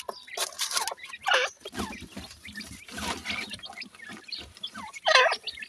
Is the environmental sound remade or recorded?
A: recorded